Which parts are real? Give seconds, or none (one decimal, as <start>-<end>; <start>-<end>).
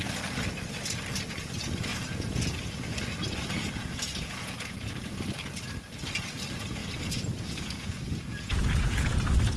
0.0-1.9; 3.0-3.6; 5.2-6.8; 9.2-9.6